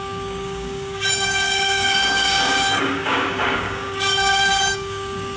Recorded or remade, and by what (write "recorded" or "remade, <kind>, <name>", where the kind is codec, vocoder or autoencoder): remade, codec, DAC